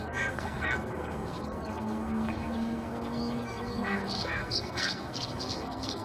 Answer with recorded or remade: remade